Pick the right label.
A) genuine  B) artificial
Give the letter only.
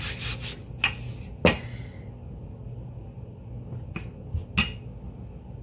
A